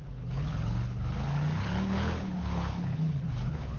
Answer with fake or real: fake